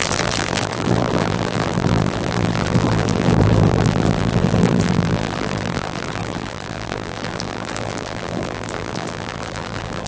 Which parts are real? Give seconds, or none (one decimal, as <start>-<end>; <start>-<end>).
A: none